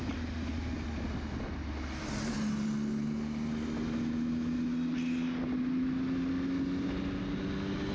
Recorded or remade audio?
recorded